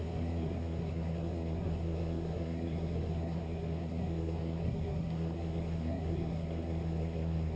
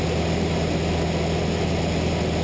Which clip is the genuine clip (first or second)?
second